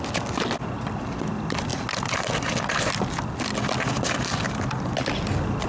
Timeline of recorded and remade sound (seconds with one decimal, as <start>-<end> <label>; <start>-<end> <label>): 0.0-5.7 recorded